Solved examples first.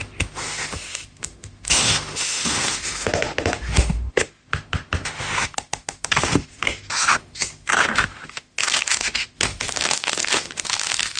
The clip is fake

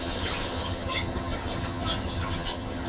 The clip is fake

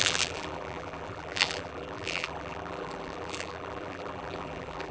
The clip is fake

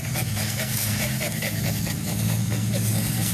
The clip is fake